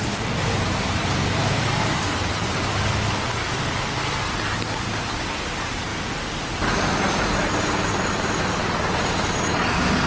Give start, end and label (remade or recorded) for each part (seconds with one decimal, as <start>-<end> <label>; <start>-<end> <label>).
0.0-10.1 recorded